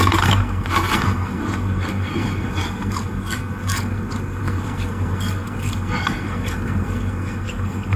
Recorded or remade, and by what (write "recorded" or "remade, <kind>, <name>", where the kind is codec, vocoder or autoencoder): remade, codec, SNAC